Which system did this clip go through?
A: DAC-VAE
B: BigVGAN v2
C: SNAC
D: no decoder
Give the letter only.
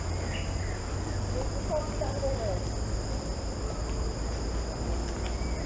D